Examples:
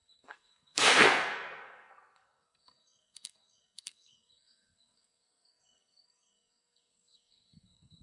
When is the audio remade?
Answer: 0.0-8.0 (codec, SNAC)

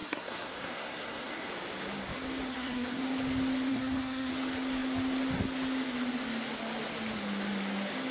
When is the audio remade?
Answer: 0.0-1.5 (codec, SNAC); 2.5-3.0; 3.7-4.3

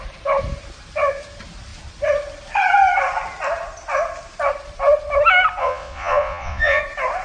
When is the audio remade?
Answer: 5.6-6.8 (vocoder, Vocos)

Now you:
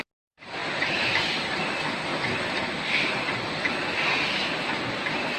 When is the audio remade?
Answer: none